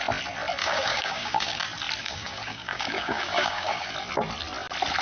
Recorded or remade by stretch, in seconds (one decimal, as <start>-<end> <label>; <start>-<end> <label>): 0.0-0.6 recorded; 0.6-1.6 remade; 1.6-2.0 recorded; 2.0-3.8 remade; 3.8-5.0 recorded